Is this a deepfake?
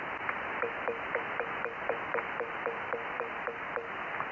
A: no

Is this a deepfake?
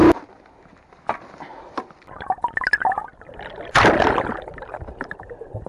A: no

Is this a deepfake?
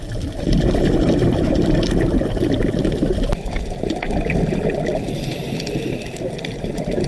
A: yes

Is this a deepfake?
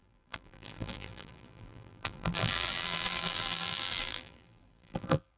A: yes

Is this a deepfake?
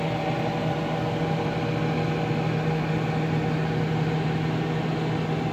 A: no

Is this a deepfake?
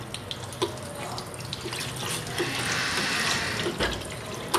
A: no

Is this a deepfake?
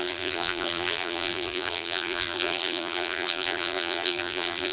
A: yes